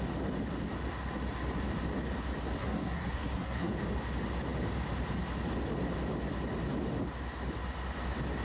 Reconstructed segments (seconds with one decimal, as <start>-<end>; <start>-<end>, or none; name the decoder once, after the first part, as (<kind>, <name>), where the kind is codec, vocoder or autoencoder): 2.6-3.7 (codec, SNAC)